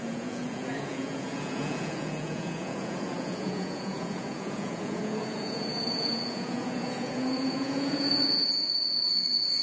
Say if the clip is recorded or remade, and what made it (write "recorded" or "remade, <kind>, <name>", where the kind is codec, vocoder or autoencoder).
remade, vocoder, Vocos